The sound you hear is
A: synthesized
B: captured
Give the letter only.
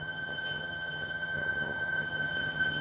A